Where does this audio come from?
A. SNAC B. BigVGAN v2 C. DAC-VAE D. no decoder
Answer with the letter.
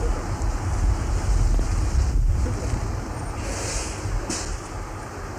D